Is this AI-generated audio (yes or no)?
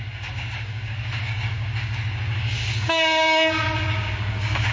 yes